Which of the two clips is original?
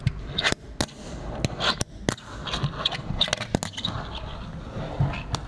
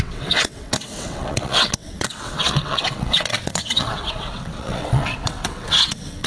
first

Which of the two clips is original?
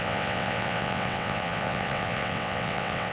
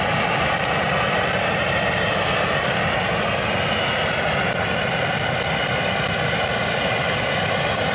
second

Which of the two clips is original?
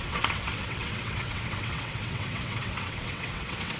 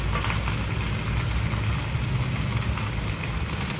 second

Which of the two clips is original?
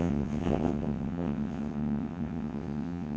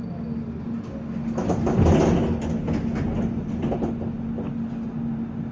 second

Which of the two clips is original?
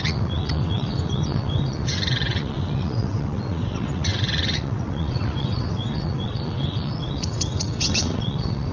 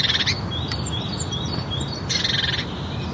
second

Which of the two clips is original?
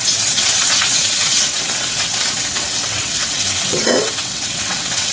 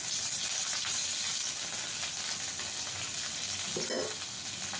second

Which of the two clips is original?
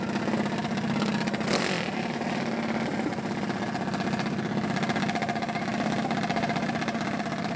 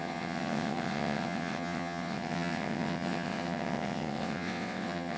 first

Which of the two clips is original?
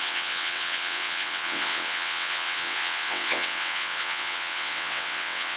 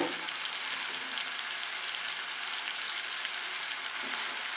second